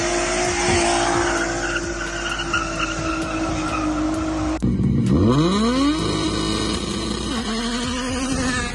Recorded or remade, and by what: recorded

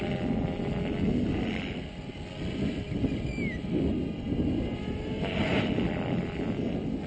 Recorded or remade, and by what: recorded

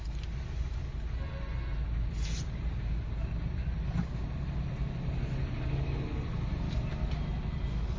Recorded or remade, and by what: recorded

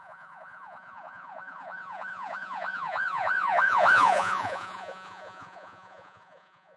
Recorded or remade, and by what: remade, vocoder, Vocos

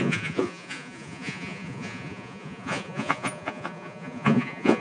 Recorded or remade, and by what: remade, vocoder, Vocos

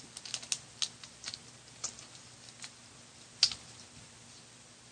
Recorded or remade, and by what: recorded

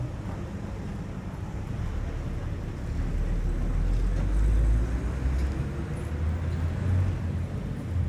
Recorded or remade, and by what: recorded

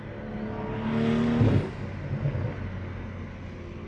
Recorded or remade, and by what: recorded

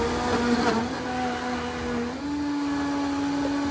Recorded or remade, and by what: recorded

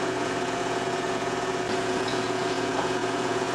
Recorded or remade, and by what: remade, vocoder, Vocos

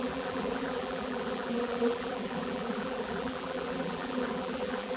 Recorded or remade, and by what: remade, vocoder, BigVGAN v2